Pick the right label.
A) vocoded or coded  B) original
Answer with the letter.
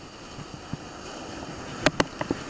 B